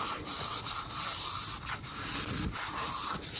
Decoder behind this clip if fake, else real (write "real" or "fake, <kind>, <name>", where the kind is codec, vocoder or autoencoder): fake, vocoder, BigVGAN v2